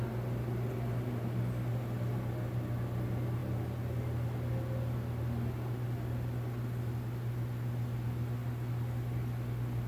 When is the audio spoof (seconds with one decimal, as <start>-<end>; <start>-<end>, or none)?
none